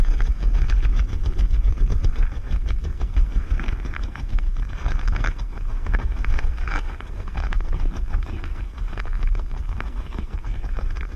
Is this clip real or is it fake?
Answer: fake